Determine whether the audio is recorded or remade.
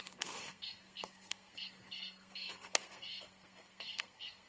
remade